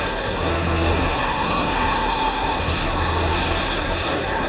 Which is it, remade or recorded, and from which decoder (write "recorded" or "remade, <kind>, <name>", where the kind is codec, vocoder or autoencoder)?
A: remade, codec, SNAC